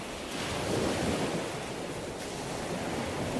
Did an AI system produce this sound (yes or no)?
no